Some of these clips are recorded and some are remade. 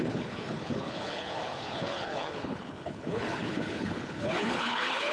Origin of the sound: remade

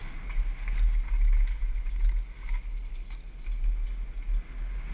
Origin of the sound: recorded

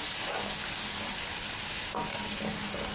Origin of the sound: recorded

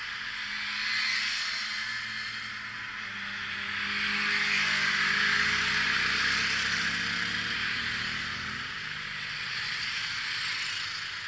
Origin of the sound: recorded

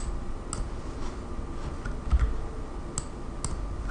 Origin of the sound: recorded